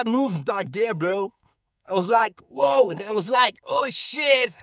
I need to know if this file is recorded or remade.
remade